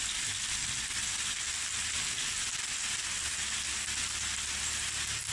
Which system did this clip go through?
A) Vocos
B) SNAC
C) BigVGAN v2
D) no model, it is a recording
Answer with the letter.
D